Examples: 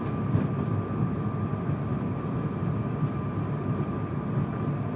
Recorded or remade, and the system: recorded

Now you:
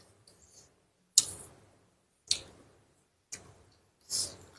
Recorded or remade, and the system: recorded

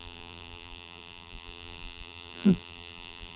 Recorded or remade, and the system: remade, vocoder, BigVGAN v2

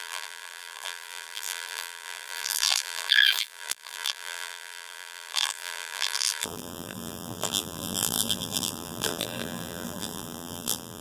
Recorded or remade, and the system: remade, vocoder, BigVGAN v2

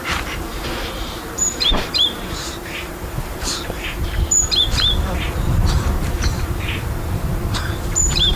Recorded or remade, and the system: remade, vocoder, BigVGAN v2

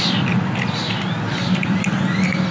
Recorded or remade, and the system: recorded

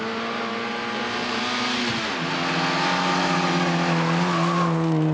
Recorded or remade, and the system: recorded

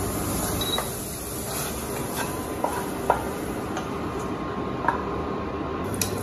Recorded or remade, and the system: recorded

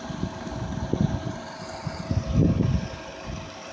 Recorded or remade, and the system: recorded